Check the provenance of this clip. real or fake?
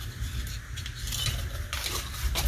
fake